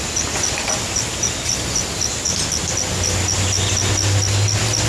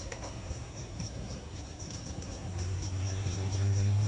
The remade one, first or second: second